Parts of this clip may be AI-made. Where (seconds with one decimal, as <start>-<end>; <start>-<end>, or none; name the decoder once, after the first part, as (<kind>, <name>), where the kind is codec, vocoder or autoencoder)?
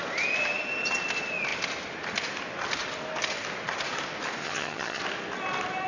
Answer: 4.4-5.0 (vocoder, HiFi-GAN)